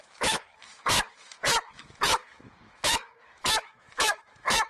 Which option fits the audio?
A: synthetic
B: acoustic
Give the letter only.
A